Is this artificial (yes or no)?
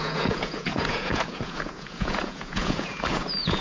yes